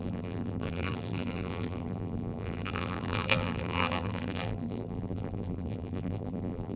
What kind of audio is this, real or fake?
fake